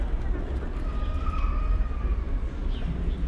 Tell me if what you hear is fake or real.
real